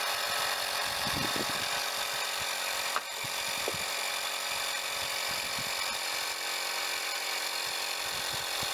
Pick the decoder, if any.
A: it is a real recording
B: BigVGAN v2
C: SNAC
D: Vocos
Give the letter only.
B